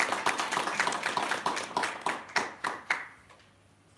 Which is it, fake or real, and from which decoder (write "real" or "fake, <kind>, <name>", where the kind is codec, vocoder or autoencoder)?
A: real